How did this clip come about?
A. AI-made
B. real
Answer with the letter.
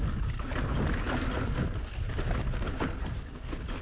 B